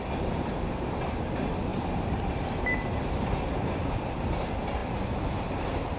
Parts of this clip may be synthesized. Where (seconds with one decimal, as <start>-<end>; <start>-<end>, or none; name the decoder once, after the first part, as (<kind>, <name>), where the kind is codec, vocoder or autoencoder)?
none